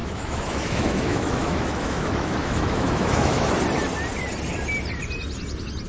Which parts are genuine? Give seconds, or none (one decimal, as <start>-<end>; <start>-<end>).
3.5-5.9